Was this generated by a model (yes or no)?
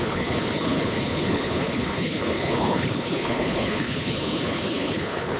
yes